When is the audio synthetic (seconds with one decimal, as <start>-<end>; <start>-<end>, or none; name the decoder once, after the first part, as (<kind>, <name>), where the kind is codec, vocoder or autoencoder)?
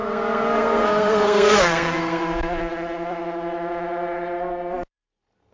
0.0-2.2 (codec, SNAC)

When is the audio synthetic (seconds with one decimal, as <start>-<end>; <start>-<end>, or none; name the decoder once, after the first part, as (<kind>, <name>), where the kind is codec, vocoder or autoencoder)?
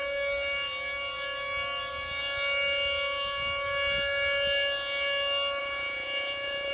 5.6-6.7 (vocoder, Vocos)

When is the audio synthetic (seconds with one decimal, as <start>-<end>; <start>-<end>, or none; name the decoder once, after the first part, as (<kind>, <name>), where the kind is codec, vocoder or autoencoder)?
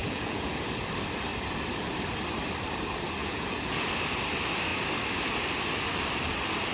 0.0-0.7 (vocoder, Vocos); 3.2-3.8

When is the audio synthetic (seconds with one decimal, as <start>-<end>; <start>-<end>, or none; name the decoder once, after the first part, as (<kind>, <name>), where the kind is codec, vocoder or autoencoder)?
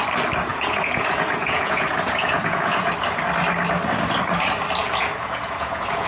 0.5-2.9 (vocoder, Vocos); 4.8-6.1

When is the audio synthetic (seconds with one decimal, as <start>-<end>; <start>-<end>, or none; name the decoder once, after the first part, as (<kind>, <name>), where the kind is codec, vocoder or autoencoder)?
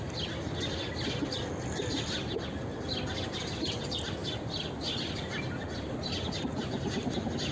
none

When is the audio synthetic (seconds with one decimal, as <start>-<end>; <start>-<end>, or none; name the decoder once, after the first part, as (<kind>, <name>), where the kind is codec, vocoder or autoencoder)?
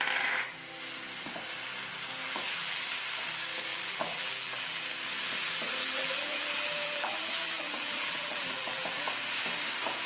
2.2-2.8 (vocoder, BigVGAN v2); 3.7-4.8; 5.8-9.1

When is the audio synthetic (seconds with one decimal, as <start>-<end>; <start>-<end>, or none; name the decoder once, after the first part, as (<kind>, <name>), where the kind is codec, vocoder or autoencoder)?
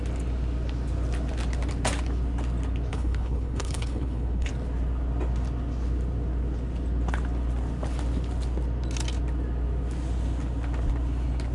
2.9-4.5 (codec, HILCodec)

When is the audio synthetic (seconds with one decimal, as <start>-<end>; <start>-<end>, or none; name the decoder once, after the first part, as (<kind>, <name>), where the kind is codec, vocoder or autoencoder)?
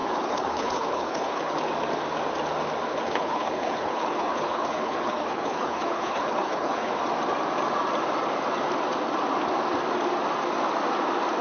0.0-1.6 (codec, HILCodec); 2.9-6.9